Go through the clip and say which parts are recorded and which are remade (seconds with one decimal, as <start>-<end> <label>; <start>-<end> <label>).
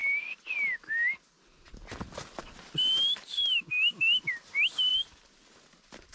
0.0-4.9 recorded; 4.9-5.5 remade; 5.5-6.1 recorded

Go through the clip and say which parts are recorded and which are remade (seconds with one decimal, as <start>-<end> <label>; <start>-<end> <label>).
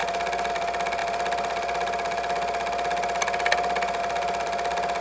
0.0-5.0 recorded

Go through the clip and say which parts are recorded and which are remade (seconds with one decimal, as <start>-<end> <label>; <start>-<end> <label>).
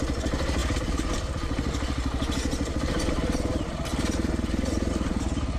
0.0-5.6 recorded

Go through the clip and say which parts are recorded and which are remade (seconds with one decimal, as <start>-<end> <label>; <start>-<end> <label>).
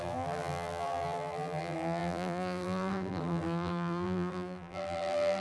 0.0-5.4 remade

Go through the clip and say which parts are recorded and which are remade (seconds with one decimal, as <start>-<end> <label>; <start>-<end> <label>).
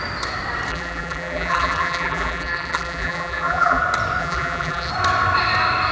0.0-0.7 recorded; 0.7-3.8 remade; 3.8-4.2 recorded; 4.2-4.9 remade; 4.9-5.9 recorded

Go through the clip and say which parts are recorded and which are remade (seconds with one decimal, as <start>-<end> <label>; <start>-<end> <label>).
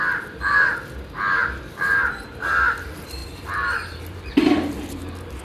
0.0-3.2 recorded; 3.2-4.3 remade; 4.3-5.4 recorded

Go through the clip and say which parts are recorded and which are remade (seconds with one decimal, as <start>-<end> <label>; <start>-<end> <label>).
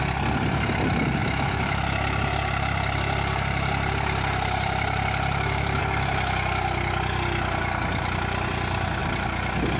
0.0-1.2 recorded; 1.2-5.8 remade; 5.8-9.0 recorded; 9.0-9.8 remade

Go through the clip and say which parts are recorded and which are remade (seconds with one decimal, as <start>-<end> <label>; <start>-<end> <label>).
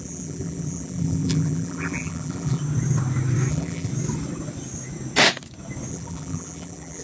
0.0-2.6 remade; 2.6-3.5 recorded; 3.5-3.9 remade; 3.9-5.9 recorded; 5.9-7.0 remade